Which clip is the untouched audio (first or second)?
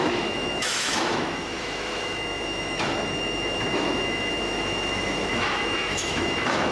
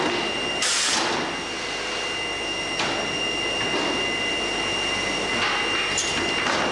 second